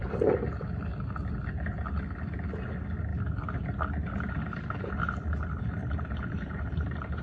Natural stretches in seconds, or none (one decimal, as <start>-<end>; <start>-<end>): 0.0-5.8